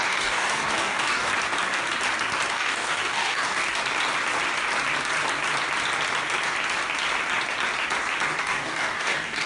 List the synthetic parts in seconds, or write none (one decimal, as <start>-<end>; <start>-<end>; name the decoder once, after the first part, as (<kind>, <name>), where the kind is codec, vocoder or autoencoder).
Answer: 0.0-1.3 (codec, DAC); 2.5-3.6; 8.4-9.5